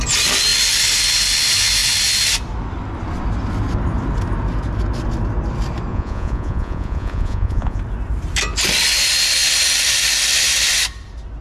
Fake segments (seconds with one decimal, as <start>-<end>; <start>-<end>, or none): 5.9-7.8